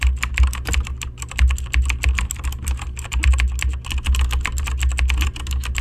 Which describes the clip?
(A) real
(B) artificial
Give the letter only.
A